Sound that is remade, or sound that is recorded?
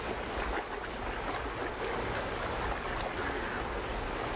recorded